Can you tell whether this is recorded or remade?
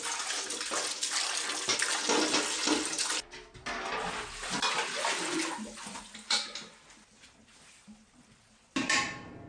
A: recorded